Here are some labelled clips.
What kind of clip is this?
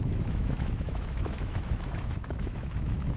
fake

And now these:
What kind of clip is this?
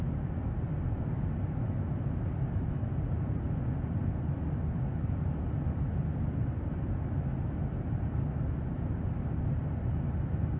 real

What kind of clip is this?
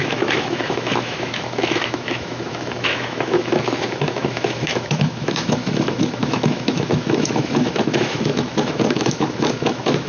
fake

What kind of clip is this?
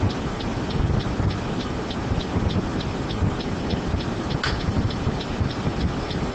real